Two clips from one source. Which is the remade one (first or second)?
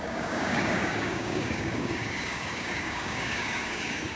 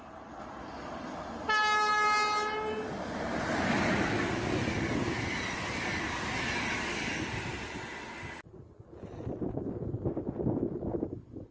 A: first